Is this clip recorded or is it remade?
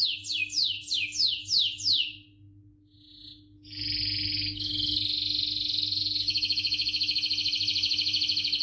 recorded